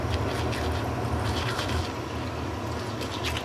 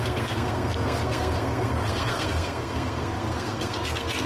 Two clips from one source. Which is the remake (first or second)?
second